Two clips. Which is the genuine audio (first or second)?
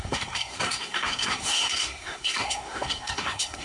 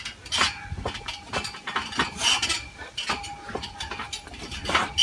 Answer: second